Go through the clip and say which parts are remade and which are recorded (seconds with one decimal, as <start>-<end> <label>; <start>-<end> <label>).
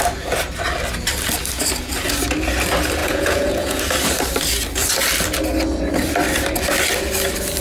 0.0-3.0 recorded; 3.0-3.8 remade; 3.8-7.6 recorded